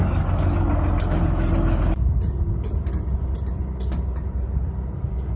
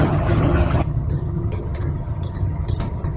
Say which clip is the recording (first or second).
first